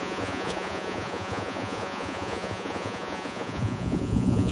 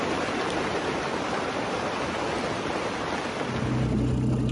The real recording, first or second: second